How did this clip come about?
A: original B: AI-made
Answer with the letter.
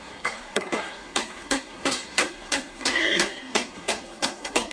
B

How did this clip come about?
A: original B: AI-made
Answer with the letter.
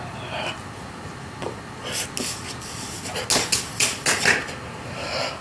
A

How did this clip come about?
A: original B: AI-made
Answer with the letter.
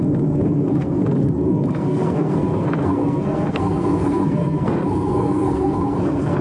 B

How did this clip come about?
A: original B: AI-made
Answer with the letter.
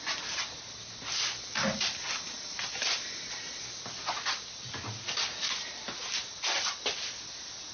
A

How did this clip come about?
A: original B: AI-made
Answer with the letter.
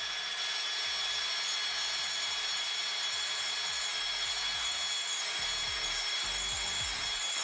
A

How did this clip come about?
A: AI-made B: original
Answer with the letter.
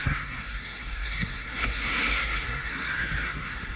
A